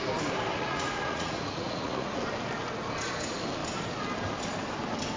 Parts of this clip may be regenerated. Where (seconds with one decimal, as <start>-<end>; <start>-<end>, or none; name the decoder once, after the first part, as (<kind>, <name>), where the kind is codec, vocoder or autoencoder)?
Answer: 0.5-2.2 (vocoder, Vocos)